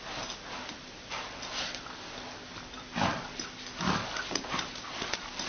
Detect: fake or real real